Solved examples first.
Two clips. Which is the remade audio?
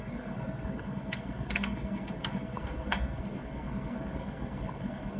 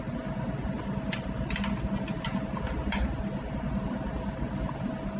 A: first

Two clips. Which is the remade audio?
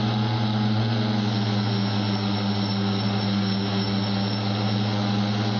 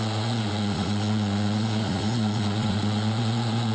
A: second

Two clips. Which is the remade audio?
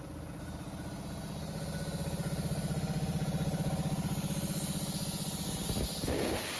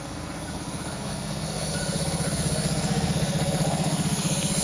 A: second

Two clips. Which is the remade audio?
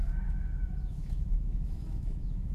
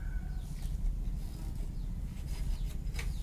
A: first